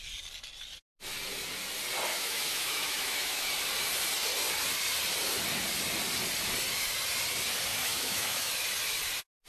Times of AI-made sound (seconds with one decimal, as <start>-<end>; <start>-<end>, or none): 2.1-3.5; 7.7-8.5